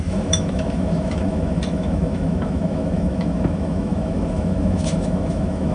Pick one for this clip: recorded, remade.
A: remade